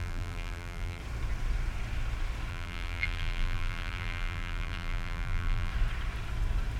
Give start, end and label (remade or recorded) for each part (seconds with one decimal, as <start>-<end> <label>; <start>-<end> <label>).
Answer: 0.0-1.0 remade; 1.0-2.5 recorded; 2.5-5.7 remade; 5.7-6.8 recorded

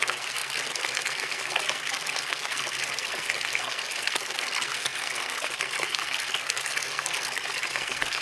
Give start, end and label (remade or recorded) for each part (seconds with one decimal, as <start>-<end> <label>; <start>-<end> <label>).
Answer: 0.0-8.2 remade

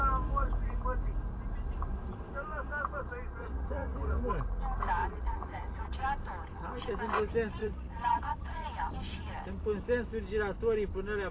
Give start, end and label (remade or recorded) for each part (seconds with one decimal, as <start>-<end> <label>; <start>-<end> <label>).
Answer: 0.0-3.4 recorded; 3.4-4.2 remade; 4.2-5.0 recorded; 5.0-6.0 remade; 6.0-7.6 recorded; 7.6-8.9 remade; 8.9-11.3 recorded

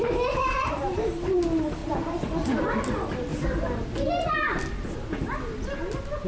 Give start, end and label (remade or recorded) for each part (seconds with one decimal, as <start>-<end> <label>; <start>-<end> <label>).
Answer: 0.0-0.4 recorded; 0.4-1.1 remade; 1.1-1.8 recorded; 1.8-2.6 remade; 2.6-6.3 recorded

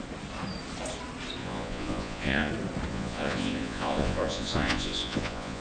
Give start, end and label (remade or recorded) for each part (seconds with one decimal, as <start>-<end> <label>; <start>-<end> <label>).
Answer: 0.0-1.4 recorded; 1.4-2.5 remade; 2.5-2.9 recorded; 2.9-5.6 remade

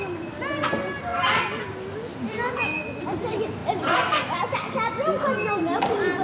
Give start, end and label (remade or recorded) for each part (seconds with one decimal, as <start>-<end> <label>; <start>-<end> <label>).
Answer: 0.0-1.1 remade; 1.1-3.0 recorded; 3.0-3.6 remade; 3.6-5.6 recorded; 5.6-6.2 remade